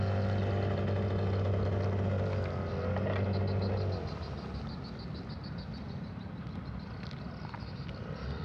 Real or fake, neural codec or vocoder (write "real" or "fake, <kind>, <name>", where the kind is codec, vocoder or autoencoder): real